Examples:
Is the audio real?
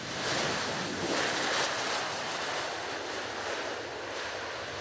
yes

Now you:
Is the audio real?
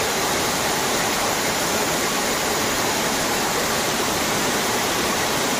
no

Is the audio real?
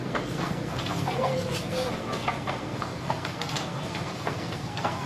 no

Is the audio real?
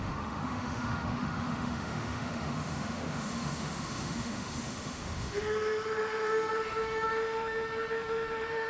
no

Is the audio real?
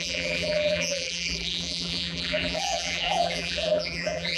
no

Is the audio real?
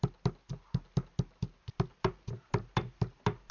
yes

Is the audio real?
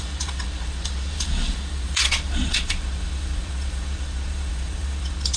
no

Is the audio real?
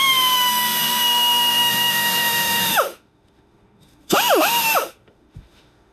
no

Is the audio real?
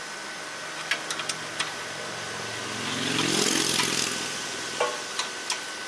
yes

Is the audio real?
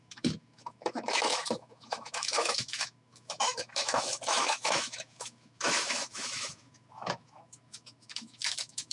no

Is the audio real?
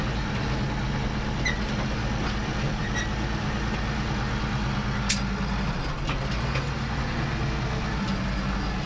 yes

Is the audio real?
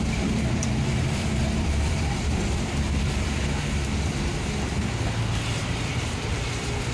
no